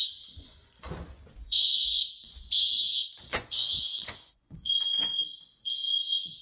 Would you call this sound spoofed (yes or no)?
yes